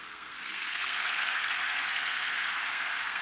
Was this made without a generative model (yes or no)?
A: no